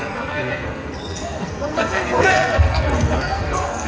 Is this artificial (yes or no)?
yes